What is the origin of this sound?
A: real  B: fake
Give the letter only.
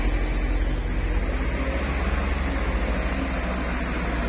A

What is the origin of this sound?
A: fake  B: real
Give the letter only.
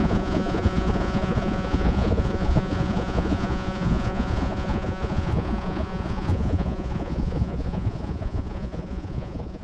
A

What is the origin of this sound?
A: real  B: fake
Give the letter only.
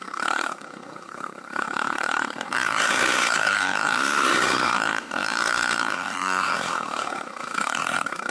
B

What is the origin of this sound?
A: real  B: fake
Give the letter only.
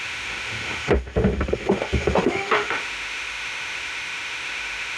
B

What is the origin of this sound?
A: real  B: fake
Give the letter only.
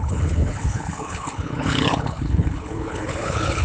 B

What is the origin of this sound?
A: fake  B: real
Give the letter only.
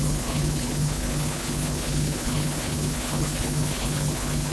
A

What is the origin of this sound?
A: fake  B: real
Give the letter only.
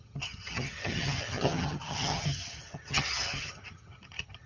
A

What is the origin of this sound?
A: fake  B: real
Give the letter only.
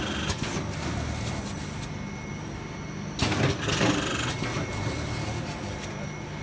B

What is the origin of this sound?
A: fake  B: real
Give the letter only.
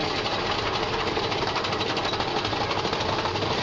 B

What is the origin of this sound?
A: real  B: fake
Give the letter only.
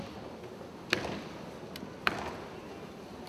A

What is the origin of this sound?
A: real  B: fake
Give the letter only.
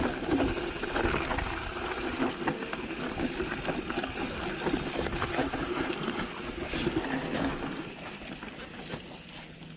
A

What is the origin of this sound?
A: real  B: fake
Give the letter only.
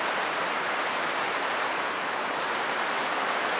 A